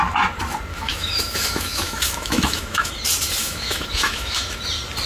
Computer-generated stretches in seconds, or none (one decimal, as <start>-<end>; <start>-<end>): 0.7-2.9; 3.4-4.6